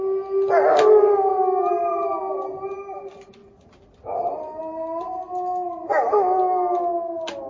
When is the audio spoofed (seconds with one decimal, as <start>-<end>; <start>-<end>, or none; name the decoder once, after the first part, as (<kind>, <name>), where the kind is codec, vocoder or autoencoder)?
1.3-2.6 (vocoder, BigVGAN v2)